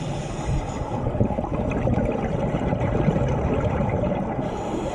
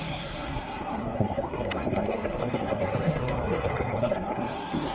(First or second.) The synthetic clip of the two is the second